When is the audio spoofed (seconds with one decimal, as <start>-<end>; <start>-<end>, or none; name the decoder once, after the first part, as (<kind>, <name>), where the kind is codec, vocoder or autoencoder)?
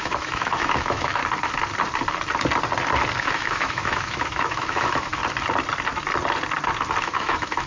0.0-1.2 (autoencoder, DAC-VAE); 3.2-5.2; 7.0-7.7